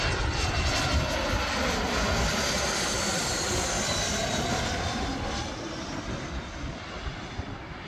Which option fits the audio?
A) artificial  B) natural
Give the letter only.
B